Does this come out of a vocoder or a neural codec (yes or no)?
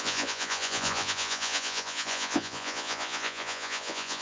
yes